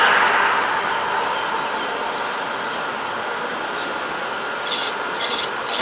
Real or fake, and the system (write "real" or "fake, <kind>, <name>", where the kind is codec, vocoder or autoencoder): real